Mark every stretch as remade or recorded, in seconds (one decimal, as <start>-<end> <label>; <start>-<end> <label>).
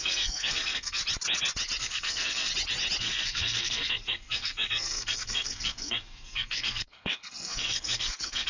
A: 0.0-1.0 remade; 1.0-1.8 recorded; 1.8-2.5 remade; 2.5-3.0 recorded; 3.0-8.5 remade